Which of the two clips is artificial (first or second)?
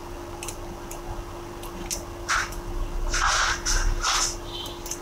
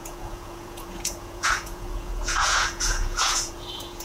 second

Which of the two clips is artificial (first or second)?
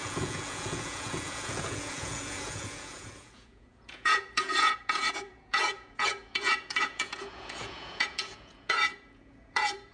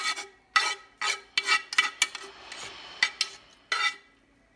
first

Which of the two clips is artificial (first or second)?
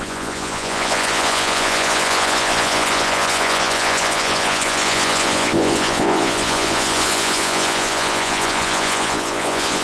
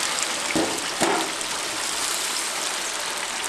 first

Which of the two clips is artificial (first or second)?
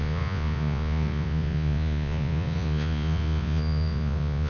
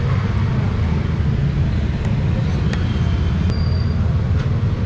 first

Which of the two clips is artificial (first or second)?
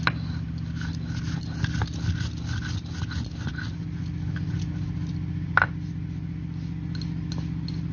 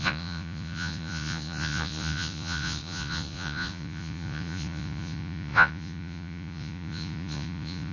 second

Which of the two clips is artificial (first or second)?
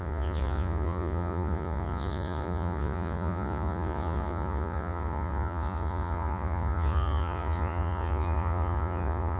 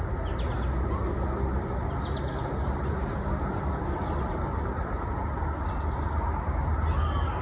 first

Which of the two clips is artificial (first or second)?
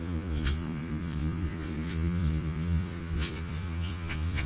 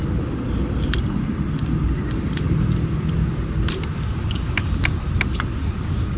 first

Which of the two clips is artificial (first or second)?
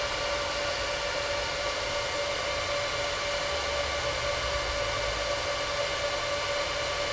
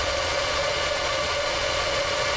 second